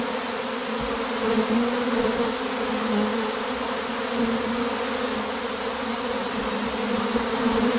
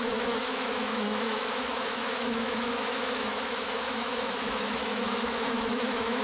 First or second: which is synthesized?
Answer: second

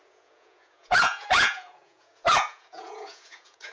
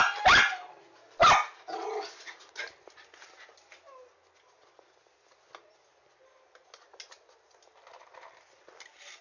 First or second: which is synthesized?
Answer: first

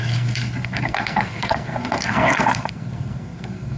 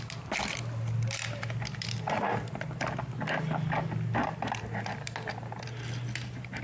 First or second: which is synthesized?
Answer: first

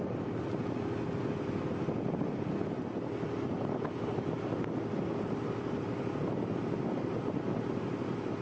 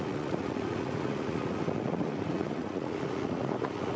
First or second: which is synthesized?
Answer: second